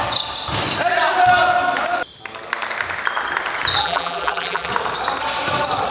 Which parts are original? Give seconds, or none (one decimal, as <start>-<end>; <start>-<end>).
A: 0.0-3.8; 4.7-5.9